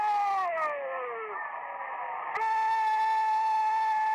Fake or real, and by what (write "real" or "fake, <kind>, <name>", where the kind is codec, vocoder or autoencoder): real